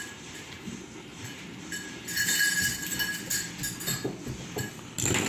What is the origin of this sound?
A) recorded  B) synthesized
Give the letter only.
A